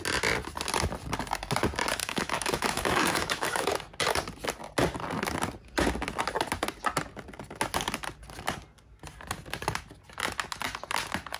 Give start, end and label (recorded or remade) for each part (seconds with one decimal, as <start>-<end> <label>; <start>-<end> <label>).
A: 0.0-2.0 recorded; 2.0-3.7 remade; 3.7-11.4 recorded